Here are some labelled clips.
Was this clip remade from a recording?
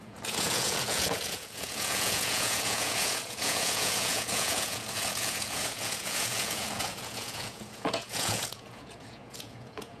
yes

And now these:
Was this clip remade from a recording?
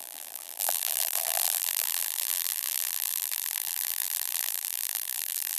yes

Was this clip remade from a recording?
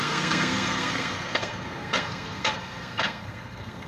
yes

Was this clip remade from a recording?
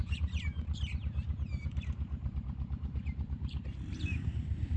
yes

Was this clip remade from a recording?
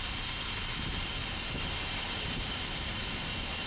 yes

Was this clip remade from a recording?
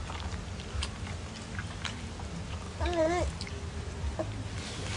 no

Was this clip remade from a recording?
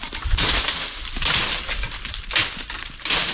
no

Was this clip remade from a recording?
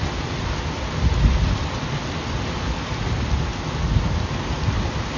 no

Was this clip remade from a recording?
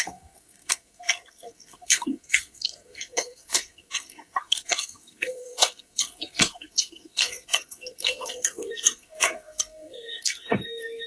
yes